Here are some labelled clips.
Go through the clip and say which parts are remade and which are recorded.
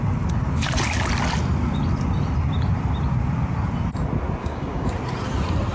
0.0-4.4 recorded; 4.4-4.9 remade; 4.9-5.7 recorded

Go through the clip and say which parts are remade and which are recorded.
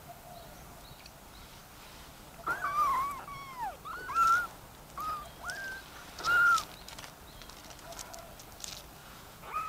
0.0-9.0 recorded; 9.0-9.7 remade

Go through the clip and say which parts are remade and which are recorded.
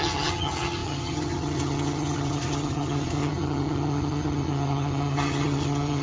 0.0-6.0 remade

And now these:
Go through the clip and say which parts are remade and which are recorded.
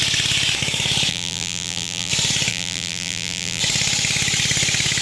0.0-1.1 recorded; 1.1-2.1 remade; 2.1-2.5 recorded; 2.5-3.6 remade; 3.6-5.0 recorded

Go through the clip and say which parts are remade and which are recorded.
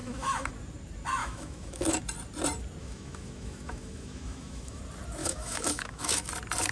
0.0-0.5 remade; 0.5-1.2 recorded; 1.2-2.0 remade; 2.0-2.8 recorded; 2.8-4.8 remade; 4.8-5.2 recorded; 5.2-6.3 remade; 6.3-6.7 recorded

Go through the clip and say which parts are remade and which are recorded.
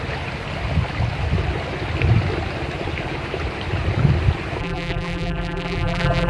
0.0-4.6 recorded; 4.6-6.3 remade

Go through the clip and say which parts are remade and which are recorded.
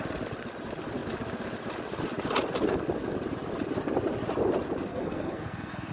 0.0-4.9 recorded; 4.9-5.9 remade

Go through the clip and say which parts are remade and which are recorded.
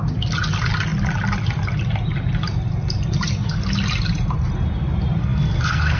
0.0-5.2 recorded; 5.2-6.0 remade